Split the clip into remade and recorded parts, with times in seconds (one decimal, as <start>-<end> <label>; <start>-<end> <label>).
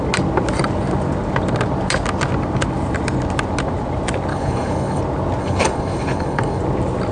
0.0-4.3 recorded; 4.3-5.0 remade; 5.0-5.4 recorded; 5.4-6.6 remade; 6.6-7.1 recorded